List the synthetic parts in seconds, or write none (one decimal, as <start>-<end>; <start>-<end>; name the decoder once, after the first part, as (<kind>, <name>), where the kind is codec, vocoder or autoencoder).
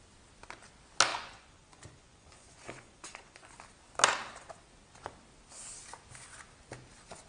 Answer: 1.1-3.5 (vocoder, Vocos)